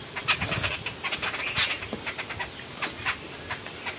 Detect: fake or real real